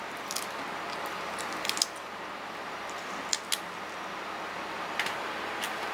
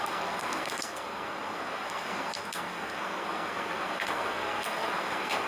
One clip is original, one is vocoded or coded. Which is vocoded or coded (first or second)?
second